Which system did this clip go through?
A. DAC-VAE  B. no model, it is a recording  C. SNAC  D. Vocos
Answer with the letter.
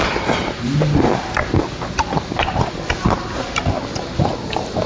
B